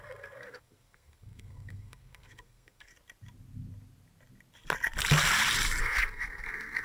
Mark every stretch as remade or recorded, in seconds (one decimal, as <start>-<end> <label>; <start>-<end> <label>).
0.0-2.9 remade; 2.9-5.8 recorded; 5.8-6.8 remade